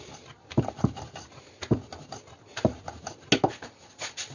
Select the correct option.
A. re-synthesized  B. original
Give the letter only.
B